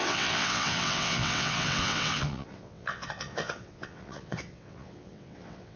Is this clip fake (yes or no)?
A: yes